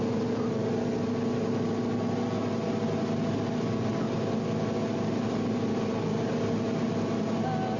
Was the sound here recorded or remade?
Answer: recorded